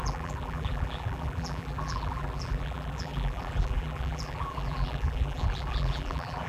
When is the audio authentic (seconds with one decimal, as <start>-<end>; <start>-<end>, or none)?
none